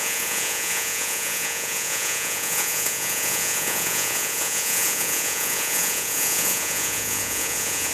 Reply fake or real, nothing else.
fake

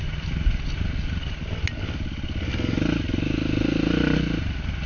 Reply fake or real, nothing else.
real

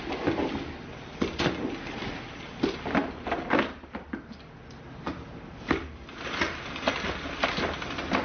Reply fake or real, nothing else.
real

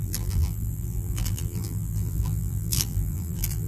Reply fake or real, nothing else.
fake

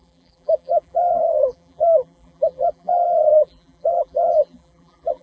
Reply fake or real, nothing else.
fake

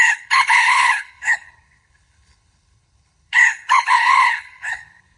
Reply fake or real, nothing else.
fake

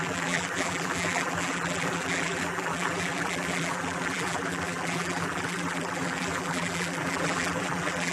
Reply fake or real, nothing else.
fake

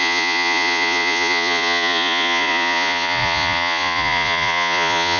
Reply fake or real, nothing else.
fake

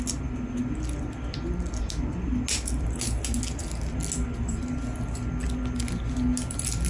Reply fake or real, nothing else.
real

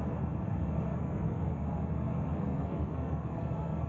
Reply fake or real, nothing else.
fake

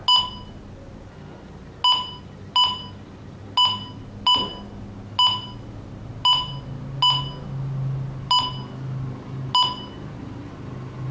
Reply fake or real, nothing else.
real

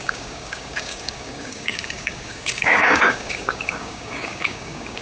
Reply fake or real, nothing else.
fake